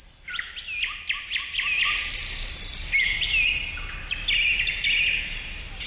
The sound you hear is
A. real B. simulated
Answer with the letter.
A